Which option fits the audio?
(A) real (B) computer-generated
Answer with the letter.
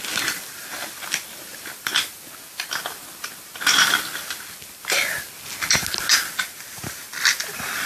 A